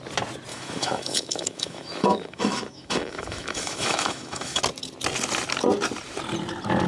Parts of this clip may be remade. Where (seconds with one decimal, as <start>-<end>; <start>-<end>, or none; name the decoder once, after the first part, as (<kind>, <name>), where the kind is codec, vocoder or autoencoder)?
0.5-4.6 (autoencoder, DAC-VAE)